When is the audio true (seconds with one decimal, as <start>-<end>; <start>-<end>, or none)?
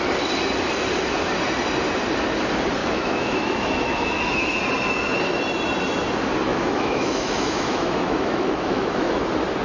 0.0-2.8; 4.6-6.5; 9.2-9.6